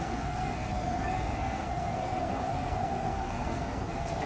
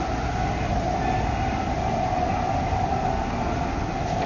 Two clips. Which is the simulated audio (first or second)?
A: first